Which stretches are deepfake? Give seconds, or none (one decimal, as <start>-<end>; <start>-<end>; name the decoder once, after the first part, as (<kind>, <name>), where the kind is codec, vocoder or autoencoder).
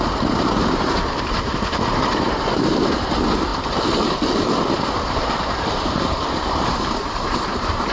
0.0-3.5 (vocoder, BigVGAN v2); 4.8-7.9